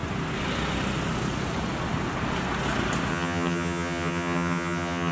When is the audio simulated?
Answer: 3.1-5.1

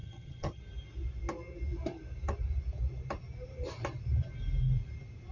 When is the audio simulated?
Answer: 0.0-0.6

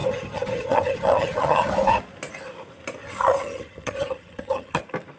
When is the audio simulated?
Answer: 0.0-1.7; 3.0-4.8

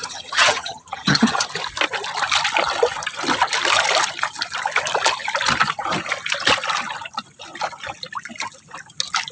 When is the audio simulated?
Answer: 0.0-1.5

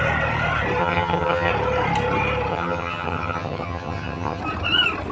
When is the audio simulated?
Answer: 0.8-1.5; 2.5-4.4